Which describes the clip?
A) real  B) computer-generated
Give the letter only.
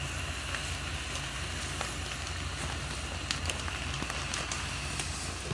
A